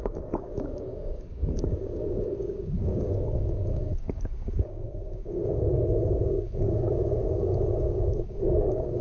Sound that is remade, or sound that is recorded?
remade